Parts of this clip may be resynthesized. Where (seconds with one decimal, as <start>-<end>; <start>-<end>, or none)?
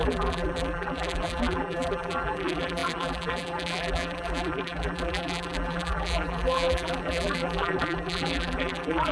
0.0-9.1